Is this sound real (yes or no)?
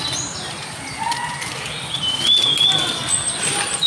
yes